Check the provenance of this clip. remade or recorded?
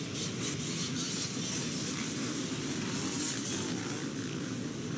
recorded